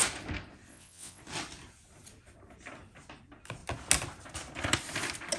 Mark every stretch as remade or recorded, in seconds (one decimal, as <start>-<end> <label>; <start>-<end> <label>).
0.0-0.7 recorded; 0.7-1.2 remade; 1.2-5.4 recorded